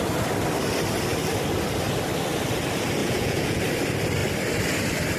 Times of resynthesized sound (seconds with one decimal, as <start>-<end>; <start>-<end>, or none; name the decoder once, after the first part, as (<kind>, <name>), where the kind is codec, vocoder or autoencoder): 3.0-3.6 (vocoder, Vocos)